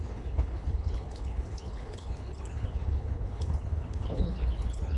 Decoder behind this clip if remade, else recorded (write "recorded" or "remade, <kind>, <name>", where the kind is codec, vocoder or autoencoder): remade, codec, HILCodec